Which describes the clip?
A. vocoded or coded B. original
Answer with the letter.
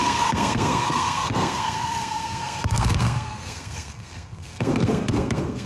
A